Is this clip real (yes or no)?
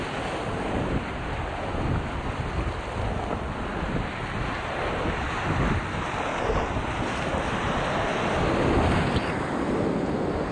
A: yes